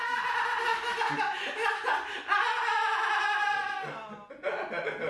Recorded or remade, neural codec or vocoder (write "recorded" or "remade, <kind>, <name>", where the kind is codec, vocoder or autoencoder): recorded